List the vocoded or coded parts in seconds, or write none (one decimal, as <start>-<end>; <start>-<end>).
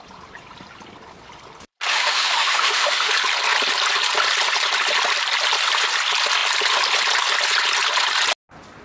1.9-3.1